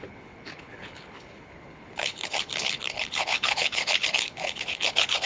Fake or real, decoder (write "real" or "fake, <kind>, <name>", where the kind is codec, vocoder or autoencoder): fake, codec, HILCodec